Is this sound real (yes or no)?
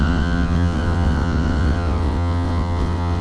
no